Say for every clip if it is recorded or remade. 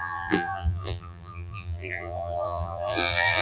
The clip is remade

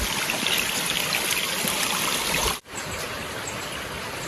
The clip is recorded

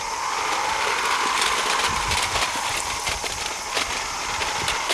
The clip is recorded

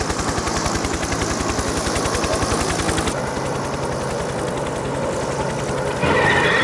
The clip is recorded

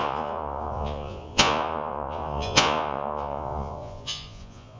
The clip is remade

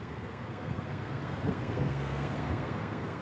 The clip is remade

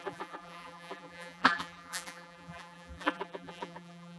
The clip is remade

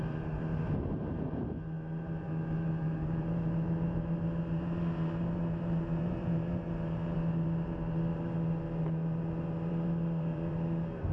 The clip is remade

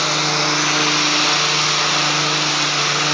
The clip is recorded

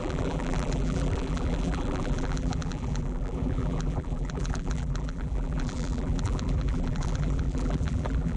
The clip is remade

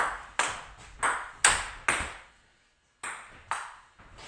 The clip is recorded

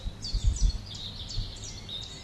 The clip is recorded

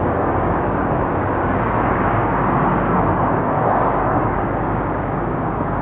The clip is remade